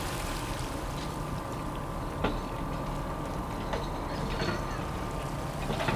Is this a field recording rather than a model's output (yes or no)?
yes